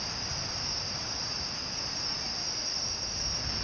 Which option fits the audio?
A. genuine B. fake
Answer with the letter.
A